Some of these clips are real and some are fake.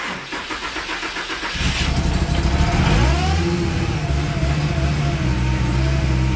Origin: real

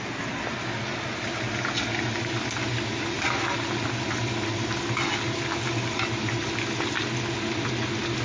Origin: real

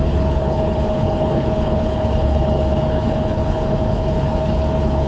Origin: fake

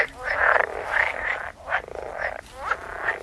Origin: real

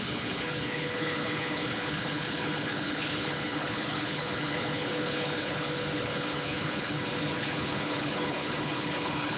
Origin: fake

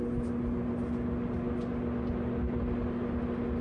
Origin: real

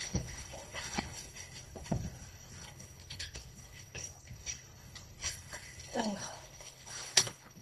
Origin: fake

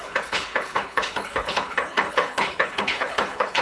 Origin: fake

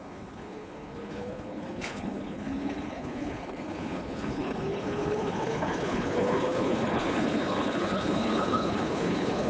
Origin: fake